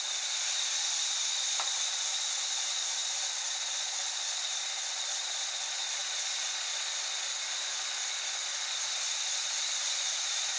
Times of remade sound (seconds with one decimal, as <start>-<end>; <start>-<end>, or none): 0.0-6.0; 9.4-10.6